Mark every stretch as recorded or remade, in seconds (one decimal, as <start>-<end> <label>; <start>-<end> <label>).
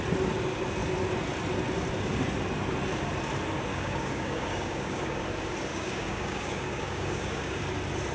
0.0-3.7 recorded; 3.7-5.2 remade; 5.2-5.7 recorded; 5.7-7.6 remade; 7.6-8.1 recorded